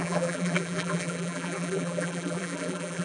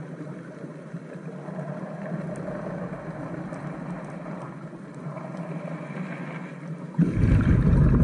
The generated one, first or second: first